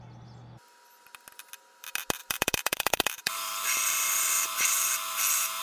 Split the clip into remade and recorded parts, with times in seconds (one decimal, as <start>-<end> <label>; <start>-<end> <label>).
0.0-2.2 recorded; 2.2-5.6 remade